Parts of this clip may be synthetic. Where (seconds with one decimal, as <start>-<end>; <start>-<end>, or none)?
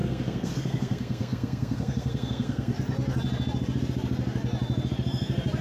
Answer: 0.0-2.7